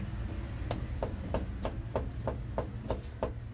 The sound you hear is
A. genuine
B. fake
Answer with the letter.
A